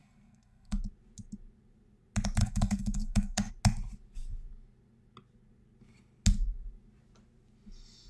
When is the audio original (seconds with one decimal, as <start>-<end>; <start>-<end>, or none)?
0.8-2.4; 3.5-8.1